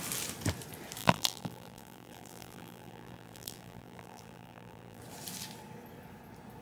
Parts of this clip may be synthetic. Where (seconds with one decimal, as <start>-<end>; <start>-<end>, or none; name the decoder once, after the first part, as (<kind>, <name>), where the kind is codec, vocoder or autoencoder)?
1.0-5.0 (vocoder, BigVGAN v2)